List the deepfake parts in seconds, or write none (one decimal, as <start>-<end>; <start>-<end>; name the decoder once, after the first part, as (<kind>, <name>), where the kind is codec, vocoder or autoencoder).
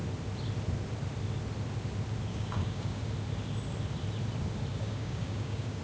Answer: 2.3-3.0 (codec, DAC); 4.7-5.8